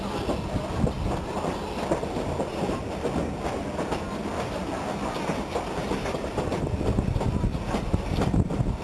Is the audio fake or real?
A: real